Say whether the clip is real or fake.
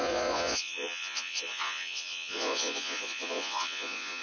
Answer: fake